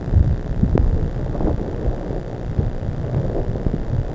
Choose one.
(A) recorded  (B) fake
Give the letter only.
A